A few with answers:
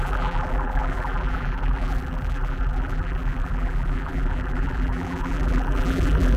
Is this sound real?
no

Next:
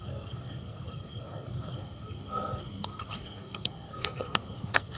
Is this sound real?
no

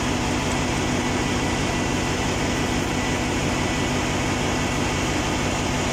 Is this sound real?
yes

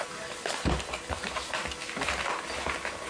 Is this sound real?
no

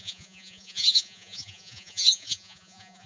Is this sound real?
no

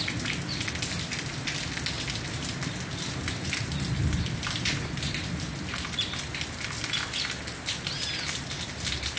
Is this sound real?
yes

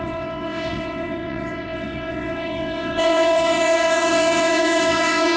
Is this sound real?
no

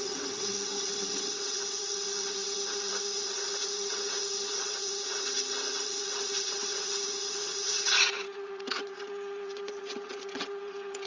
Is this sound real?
no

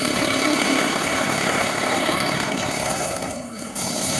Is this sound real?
no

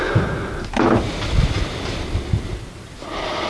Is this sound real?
yes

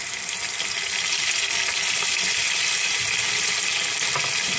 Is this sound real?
yes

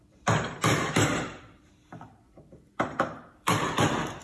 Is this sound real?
no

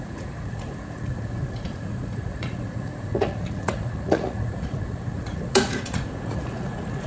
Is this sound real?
no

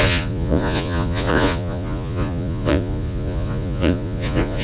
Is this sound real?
no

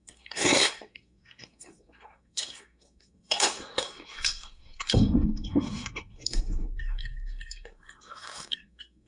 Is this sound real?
no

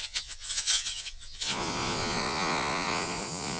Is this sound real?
no